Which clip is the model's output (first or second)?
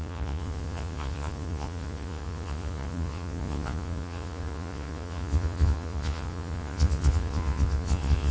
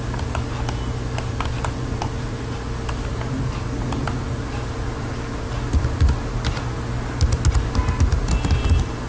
first